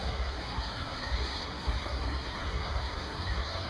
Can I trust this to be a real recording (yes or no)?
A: no